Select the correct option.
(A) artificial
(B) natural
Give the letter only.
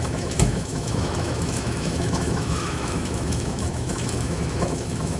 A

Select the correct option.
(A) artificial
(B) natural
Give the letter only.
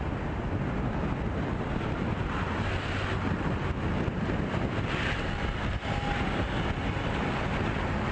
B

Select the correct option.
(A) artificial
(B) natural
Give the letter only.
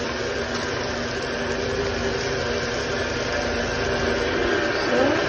B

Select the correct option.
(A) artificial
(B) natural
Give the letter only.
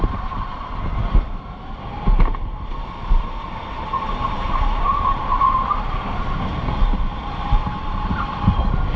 A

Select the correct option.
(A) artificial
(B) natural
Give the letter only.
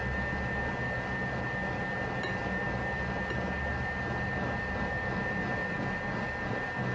B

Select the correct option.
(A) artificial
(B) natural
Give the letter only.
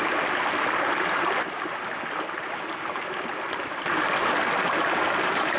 B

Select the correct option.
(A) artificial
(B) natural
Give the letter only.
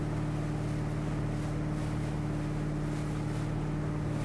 B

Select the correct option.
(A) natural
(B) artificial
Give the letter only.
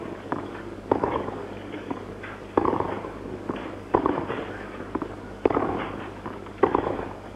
B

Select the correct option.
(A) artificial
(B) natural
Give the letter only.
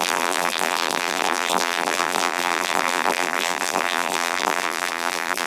A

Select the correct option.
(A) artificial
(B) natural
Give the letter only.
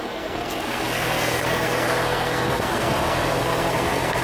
A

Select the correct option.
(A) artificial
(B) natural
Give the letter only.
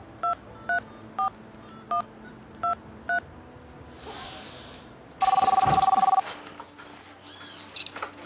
B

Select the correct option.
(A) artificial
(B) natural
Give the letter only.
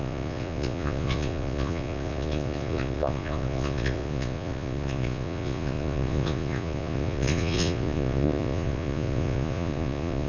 A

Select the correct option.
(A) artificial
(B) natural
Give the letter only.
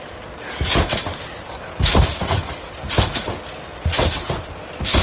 B